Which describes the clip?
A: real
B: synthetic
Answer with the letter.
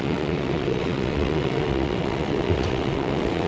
B